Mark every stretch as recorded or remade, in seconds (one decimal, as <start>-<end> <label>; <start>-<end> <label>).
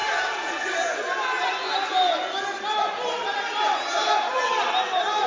0.0-5.3 recorded